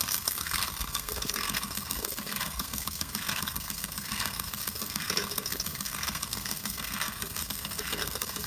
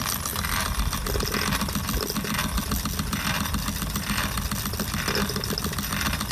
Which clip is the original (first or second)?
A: second